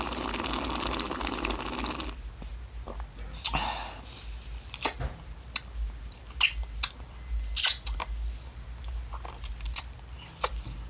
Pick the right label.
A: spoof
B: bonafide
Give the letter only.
B